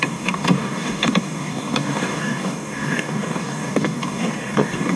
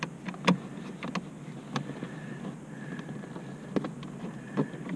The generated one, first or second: first